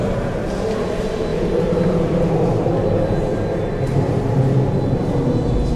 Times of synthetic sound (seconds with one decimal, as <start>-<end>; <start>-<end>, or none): 1.3-2.5; 3.3-4.1